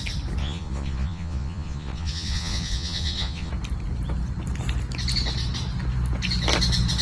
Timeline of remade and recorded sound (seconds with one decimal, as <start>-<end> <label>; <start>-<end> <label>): 0.0-0.4 recorded; 0.4-3.5 remade; 3.5-7.0 recorded